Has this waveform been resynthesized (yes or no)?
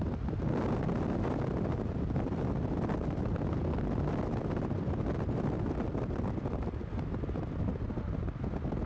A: no